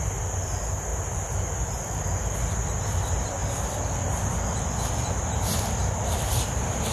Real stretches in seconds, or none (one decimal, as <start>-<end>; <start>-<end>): 0.0-6.9